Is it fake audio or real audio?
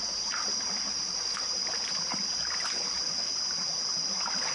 real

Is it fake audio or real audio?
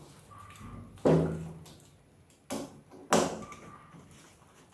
real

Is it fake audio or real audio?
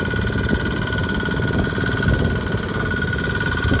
real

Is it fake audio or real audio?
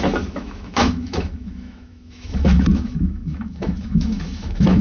fake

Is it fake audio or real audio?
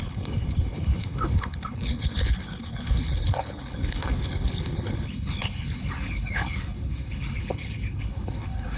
fake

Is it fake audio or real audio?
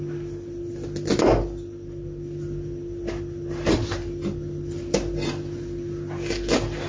real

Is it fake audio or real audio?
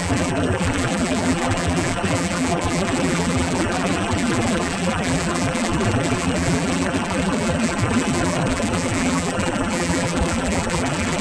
fake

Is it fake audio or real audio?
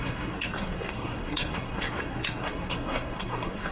fake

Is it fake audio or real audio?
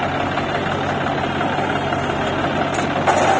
real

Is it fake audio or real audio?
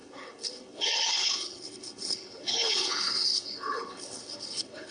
fake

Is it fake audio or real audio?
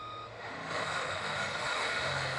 fake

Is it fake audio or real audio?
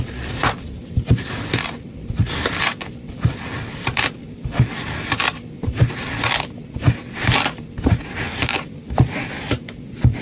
real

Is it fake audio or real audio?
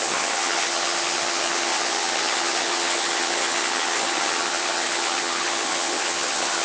fake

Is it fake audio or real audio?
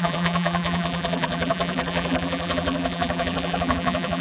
fake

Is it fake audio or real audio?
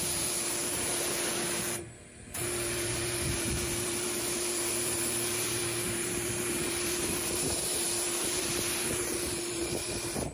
fake